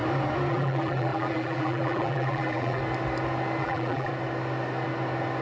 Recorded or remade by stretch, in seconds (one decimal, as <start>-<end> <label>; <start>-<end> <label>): 0.0-0.5 recorded; 0.5-2.8 remade; 2.8-3.6 recorded; 3.6-4.1 remade; 4.1-5.4 recorded